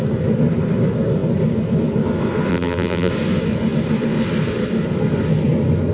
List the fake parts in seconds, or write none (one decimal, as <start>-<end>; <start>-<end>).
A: 2.5-3.1